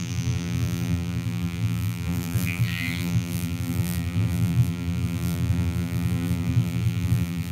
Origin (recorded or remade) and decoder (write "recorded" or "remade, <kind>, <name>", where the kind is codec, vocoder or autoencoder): remade, vocoder, BigVGAN v2